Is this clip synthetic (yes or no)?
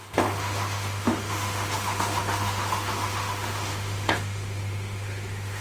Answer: yes